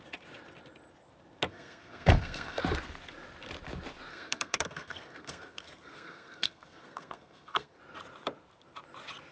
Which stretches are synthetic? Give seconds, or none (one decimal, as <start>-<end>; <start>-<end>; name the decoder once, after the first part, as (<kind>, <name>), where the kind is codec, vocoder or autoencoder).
1.5-2.6 (codec, SNAC); 4.1-7.8